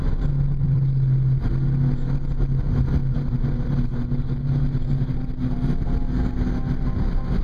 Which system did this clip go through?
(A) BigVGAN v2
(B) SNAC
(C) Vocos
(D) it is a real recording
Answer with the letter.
D